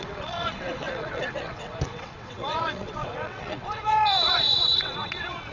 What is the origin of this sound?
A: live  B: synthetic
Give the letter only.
B